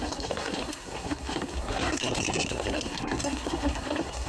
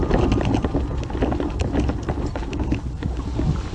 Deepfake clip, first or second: first